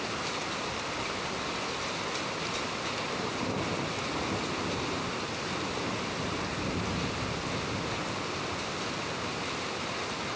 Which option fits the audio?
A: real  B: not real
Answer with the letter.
A